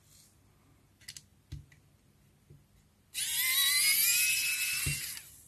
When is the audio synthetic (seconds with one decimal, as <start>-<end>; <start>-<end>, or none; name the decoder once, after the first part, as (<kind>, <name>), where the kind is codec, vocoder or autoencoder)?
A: none